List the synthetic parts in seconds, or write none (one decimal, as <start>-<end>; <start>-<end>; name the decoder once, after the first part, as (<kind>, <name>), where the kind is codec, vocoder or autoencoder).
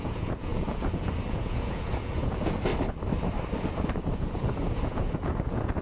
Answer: 0.0-2.7 (vocoder, Vocos); 3.6-5.8